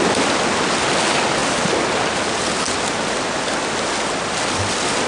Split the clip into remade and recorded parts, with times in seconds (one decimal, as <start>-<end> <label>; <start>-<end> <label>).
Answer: 0.0-5.1 recorded